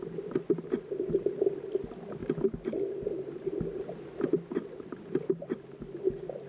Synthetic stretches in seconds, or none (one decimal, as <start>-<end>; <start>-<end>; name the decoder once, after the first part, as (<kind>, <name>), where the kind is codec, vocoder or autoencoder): none